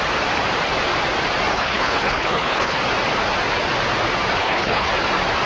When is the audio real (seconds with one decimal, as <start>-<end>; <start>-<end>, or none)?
0.0-1.5; 2.8-4.4; 4.9-5.5